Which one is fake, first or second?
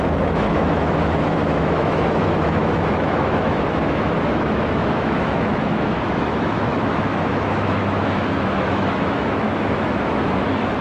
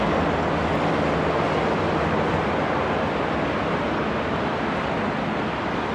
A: first